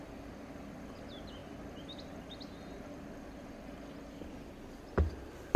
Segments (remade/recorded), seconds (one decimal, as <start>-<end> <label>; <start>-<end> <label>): 0.0-5.6 recorded